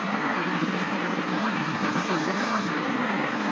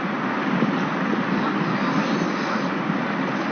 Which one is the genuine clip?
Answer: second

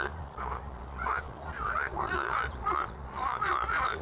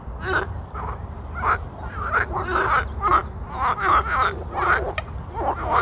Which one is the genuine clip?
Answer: second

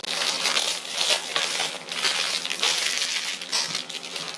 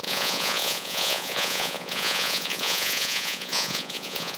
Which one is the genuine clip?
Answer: first